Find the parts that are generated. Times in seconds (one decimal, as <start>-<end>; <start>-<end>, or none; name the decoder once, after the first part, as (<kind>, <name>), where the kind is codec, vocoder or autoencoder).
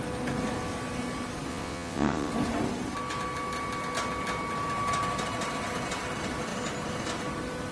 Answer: 1.5-2.3 (vocoder, WaveNeXt)